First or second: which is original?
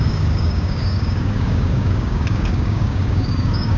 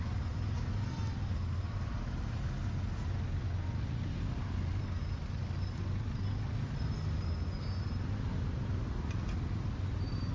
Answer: second